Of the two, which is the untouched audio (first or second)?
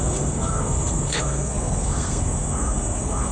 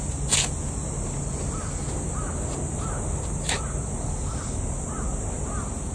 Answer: second